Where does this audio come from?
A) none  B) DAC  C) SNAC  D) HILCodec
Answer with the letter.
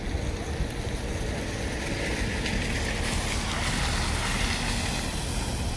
A